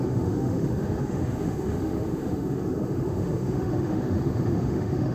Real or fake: fake